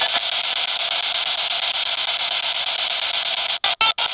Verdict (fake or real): real